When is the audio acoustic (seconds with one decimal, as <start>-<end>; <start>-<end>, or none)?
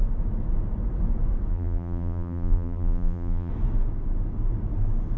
0.0-1.5; 3.5-5.2